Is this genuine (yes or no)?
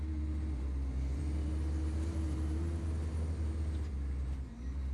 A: yes